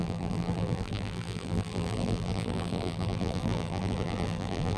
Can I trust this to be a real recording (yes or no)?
no